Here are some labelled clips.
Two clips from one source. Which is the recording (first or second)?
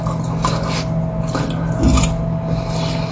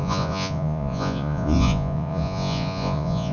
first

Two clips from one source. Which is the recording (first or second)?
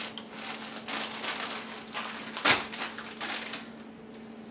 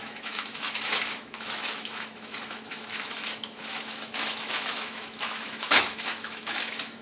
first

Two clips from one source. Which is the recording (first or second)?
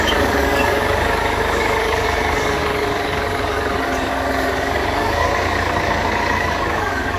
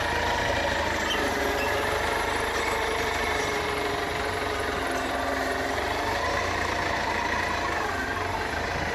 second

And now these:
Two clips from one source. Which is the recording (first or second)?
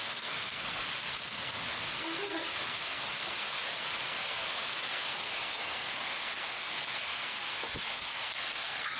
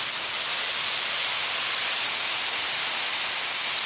second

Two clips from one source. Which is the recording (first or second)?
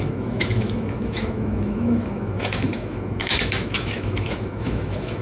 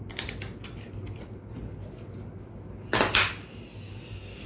second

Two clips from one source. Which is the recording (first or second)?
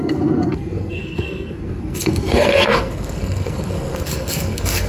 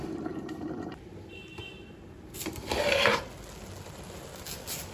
second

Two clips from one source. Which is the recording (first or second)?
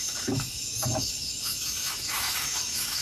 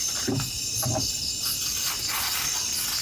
second